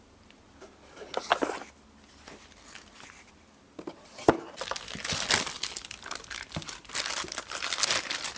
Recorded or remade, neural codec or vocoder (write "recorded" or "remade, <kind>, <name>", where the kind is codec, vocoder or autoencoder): recorded